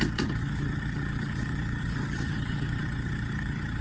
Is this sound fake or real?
fake